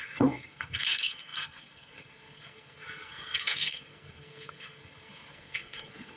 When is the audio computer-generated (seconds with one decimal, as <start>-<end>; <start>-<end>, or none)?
0.0-6.2

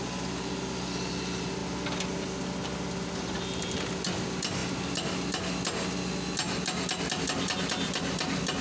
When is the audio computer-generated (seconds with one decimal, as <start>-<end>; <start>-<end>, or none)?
none

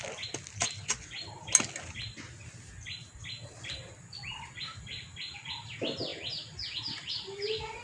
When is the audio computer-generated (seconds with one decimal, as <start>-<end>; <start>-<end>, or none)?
none

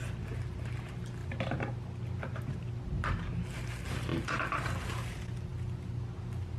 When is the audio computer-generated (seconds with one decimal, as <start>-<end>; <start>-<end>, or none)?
none

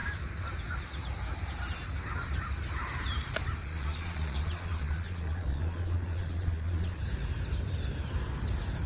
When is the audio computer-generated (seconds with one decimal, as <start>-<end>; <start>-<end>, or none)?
3.6-7.0